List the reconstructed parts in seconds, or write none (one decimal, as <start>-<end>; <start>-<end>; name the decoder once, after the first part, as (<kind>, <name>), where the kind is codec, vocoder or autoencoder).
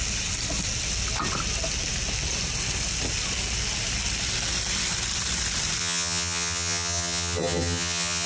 5.8-8.3 (vocoder, HiFi-GAN)